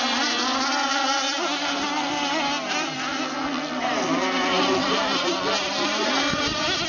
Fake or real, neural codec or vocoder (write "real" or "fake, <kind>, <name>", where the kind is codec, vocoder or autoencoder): real